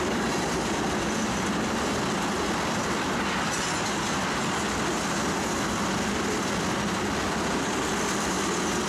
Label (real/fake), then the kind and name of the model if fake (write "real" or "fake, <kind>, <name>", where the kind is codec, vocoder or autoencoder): real